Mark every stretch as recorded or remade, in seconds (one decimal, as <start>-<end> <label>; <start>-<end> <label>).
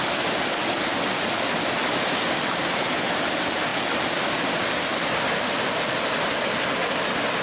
0.0-7.4 recorded